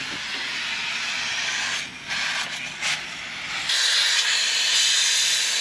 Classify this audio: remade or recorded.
recorded